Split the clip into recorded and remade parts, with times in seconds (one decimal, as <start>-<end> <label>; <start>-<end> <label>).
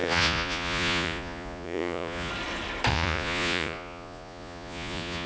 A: 0.0-2.3 remade; 2.3-2.9 recorded; 2.9-5.3 remade